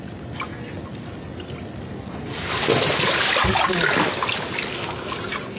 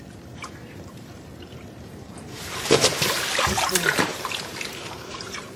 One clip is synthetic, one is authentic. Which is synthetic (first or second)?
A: second